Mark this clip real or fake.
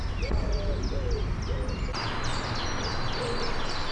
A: real